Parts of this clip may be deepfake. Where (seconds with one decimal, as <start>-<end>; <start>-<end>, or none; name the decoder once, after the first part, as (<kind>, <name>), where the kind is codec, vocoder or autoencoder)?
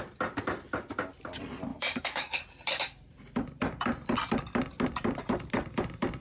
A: 1.7-2.4 (autoencoder, DAC-VAE)